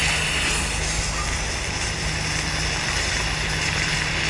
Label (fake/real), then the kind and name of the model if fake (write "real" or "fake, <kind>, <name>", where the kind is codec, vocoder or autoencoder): real